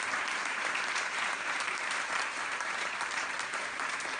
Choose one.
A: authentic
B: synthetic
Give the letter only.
B